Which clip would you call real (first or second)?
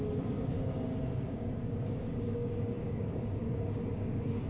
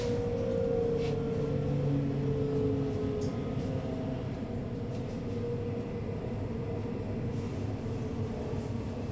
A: second